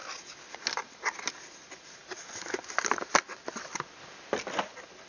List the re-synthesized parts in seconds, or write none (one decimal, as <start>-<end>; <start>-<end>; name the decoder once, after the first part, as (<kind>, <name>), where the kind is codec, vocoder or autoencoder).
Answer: none

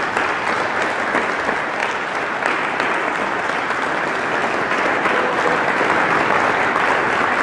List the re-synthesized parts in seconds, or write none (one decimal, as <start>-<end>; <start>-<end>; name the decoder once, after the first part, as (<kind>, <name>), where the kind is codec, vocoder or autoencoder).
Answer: none